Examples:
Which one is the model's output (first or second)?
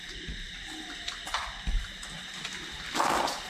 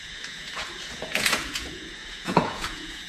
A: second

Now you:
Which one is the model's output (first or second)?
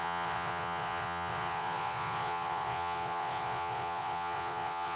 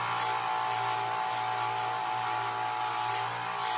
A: first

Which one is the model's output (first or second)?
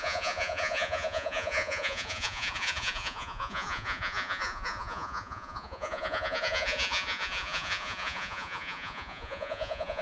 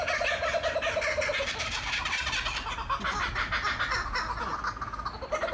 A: first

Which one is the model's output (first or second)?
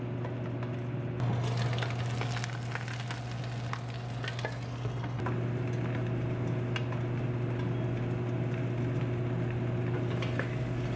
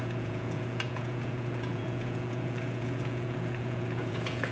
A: second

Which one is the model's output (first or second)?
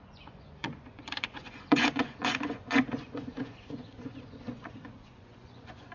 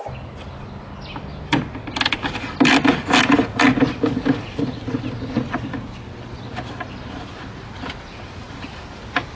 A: first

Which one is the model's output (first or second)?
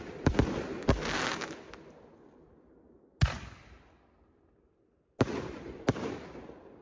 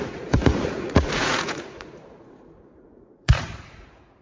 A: second